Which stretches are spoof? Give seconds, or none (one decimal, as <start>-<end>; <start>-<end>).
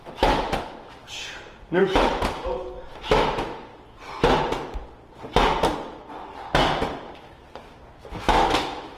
0.0-1.0; 1.8-2.4; 2.9-3.7; 7.9-9.0